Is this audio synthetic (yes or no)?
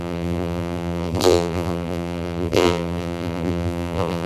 yes